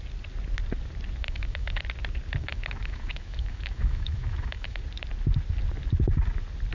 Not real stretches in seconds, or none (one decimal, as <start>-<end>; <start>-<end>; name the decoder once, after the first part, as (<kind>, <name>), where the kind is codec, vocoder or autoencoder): 1.2-1.8 (autoencoder, DAC-VAE); 2.4-4.8